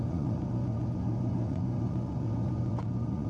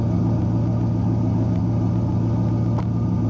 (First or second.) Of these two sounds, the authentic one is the second